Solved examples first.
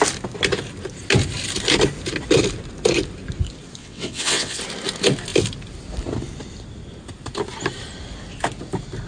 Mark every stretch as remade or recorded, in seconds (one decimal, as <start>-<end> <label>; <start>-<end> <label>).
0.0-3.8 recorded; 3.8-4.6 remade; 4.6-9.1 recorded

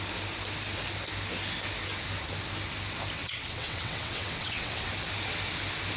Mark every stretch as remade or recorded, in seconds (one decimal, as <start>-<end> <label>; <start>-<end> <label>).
0.0-3.2 recorded; 3.2-4.9 remade; 4.9-6.0 recorded

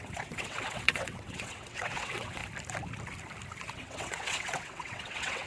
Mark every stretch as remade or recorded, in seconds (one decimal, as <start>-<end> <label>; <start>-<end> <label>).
0.0-2.4 remade; 2.4-3.7 recorded; 3.7-5.5 remade